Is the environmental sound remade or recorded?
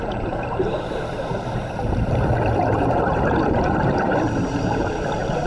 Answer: remade